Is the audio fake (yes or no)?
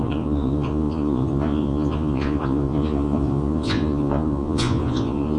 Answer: yes